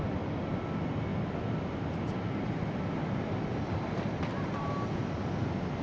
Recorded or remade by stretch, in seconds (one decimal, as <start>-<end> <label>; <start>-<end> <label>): 0.0-5.8 recorded